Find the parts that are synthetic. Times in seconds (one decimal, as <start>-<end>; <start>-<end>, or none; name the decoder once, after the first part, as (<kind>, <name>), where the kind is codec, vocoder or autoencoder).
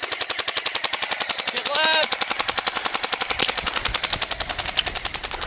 none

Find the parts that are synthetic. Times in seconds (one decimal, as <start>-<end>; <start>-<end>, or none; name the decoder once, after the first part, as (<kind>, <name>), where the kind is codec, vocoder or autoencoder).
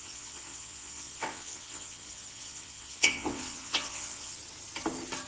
0.0-4.4 (vocoder, WaveNeXt)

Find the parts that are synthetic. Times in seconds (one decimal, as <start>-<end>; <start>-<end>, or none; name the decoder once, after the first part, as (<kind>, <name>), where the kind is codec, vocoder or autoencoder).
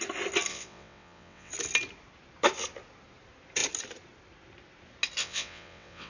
0.5-1.5 (vocoder, WaveNeXt); 5.2-6.1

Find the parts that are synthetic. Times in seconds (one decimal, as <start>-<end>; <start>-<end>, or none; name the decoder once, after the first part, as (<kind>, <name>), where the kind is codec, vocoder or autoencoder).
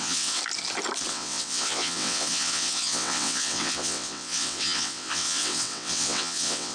0.0-0.4 (vocoder, WaveNeXt); 1.1-6.7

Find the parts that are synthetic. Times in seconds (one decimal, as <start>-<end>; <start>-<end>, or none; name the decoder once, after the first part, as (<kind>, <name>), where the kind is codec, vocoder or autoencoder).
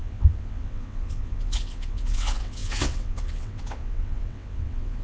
0.0-5.0 (vocoder, WaveNeXt)